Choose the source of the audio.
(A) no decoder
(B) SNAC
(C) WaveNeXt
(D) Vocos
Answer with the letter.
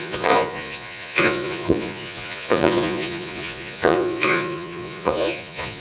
D